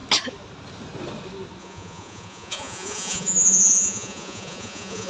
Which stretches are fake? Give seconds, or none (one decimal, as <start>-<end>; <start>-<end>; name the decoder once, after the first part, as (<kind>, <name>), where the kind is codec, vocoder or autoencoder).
1.6-5.1 (vocoder, Vocos)